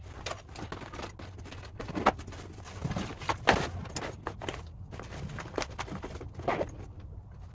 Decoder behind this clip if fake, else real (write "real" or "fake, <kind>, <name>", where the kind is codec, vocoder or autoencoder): real